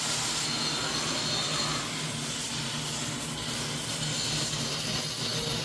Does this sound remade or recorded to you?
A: recorded